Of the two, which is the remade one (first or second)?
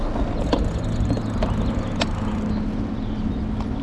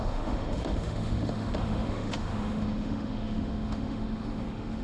second